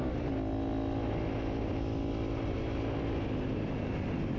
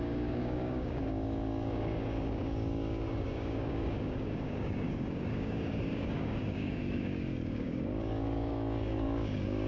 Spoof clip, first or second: second